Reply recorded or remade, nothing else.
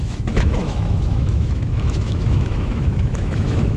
remade